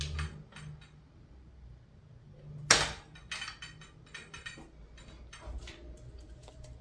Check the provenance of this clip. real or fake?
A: real